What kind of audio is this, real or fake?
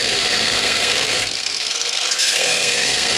fake